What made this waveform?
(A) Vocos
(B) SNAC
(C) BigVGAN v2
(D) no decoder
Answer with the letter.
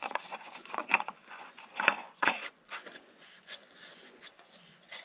A